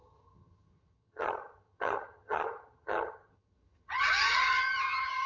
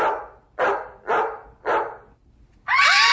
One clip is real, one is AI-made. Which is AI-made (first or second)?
first